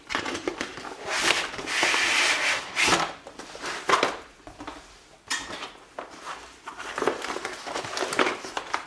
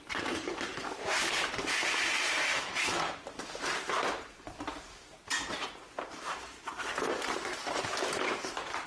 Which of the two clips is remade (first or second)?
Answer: second